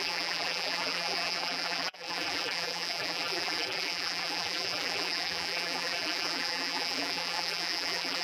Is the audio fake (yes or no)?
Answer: yes